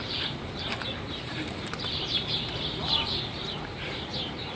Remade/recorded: remade